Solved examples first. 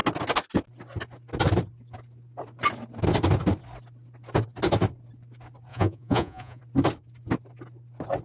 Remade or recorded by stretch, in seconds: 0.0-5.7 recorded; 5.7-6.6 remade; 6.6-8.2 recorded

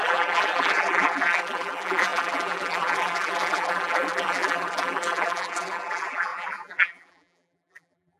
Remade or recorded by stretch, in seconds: 0.0-8.2 remade